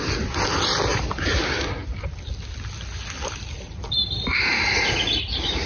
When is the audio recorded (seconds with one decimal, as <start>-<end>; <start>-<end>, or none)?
0.0-0.9; 1.4-5.7